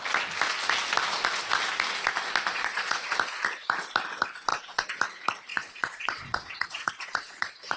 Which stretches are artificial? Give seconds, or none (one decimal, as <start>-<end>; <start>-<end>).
2.5-3.1; 4.5-5.0; 5.5-7.8